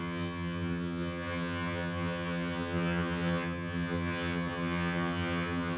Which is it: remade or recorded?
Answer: remade